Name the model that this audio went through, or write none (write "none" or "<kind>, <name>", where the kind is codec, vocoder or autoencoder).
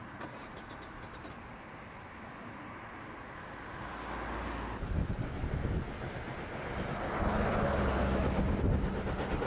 none